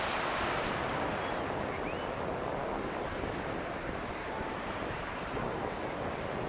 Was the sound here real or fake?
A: real